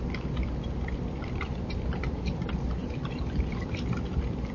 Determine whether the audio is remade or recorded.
remade